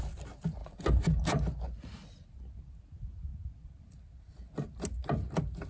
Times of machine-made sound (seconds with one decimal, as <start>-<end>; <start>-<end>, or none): none